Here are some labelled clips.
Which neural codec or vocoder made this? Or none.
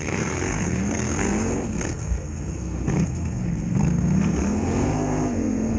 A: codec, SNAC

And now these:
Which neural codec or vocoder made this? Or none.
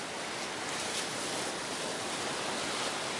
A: none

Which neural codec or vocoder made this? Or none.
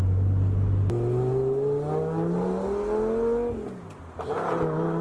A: none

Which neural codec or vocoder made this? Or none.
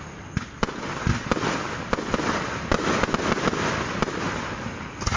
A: none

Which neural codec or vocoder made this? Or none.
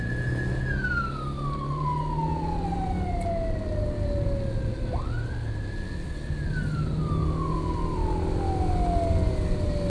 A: none